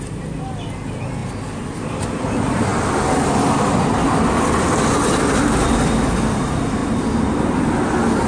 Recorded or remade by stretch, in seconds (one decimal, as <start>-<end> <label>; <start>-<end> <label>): 0.0-8.3 recorded